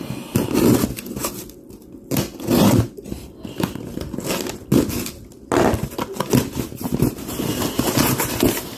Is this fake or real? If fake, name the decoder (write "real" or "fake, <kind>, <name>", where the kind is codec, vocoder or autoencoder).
real